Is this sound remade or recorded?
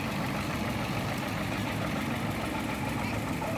recorded